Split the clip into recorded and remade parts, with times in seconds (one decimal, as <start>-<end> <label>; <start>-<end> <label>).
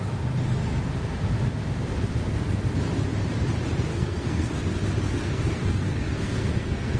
0.0-3.9 recorded; 3.9-4.5 remade; 4.5-5.2 recorded; 5.2-7.0 remade